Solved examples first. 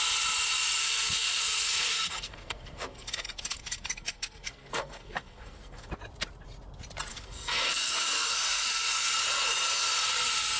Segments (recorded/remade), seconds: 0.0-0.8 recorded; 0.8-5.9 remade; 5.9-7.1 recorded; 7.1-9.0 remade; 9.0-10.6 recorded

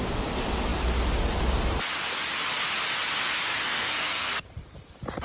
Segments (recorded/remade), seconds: 0.0-3.5 recorded; 3.5-4.5 remade; 4.5-5.2 recorded

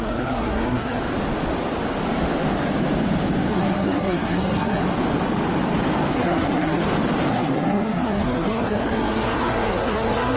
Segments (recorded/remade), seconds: 0.0-1.0 remade; 1.0-3.5 recorded; 3.5-4.8 remade; 4.8-6.1 recorded; 6.1-6.8 remade; 6.8-7.3 recorded; 7.3-10.4 remade